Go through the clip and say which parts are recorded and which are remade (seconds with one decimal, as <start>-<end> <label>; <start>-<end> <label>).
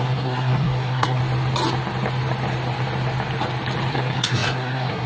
0.0-1.2 remade; 1.2-3.9 recorded; 3.9-5.1 remade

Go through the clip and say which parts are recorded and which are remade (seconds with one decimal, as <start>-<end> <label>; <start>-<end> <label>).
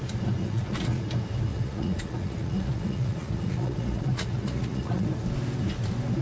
0.0-0.4 recorded; 0.4-1.0 remade; 1.0-1.5 recorded; 1.5-5.1 remade; 5.1-6.2 recorded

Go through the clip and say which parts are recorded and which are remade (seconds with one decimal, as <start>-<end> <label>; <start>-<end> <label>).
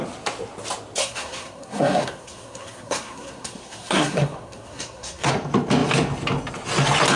0.0-1.0 recorded; 1.0-5.3 remade; 5.3-7.2 recorded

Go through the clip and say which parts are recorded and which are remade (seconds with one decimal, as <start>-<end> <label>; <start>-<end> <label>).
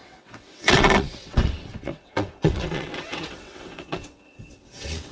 0.0-5.1 remade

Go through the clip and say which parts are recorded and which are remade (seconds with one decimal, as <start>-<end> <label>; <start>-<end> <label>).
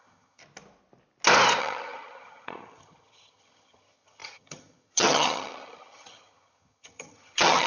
0.0-0.4 remade; 0.4-1.6 recorded; 1.6-7.7 remade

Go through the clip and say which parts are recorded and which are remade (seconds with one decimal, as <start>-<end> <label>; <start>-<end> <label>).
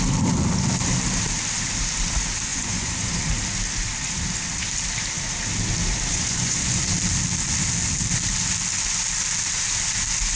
0.0-2.5 recorded; 2.5-3.2 remade; 3.2-6.1 recorded; 6.1-6.8 remade; 6.8-10.4 recorded